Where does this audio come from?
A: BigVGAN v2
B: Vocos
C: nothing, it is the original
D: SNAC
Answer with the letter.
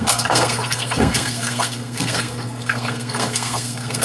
D